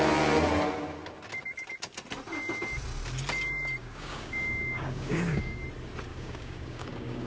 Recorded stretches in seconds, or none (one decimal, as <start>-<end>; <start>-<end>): 0.0-3.8; 5.6-6.1